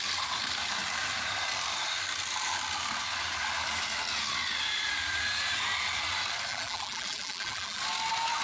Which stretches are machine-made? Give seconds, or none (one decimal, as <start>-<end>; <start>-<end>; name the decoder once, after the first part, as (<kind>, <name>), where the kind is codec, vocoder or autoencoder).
6.5-7.8 (vocoder, BigVGAN v2)